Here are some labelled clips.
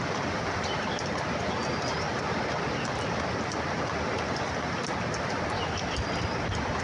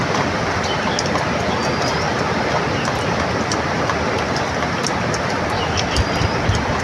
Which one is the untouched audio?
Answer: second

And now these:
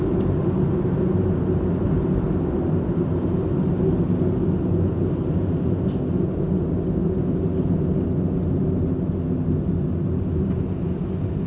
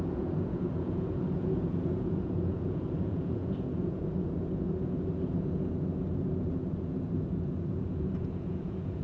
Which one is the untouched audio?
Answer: first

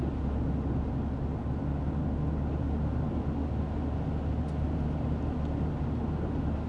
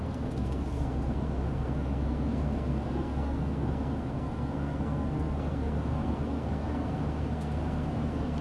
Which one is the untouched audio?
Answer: first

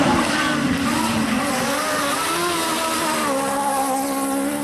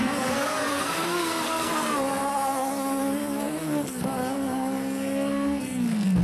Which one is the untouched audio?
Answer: first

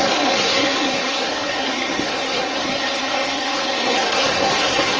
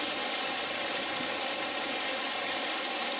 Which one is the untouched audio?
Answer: second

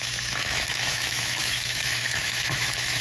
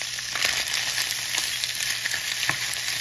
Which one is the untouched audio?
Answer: second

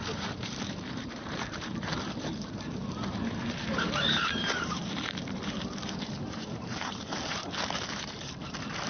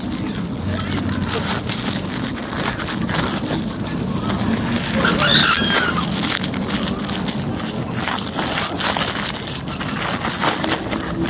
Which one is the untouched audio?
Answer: second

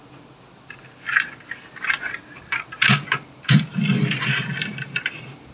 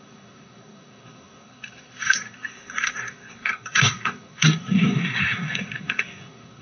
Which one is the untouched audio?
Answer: first